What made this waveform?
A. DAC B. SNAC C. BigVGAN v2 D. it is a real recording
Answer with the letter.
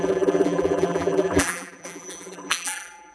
C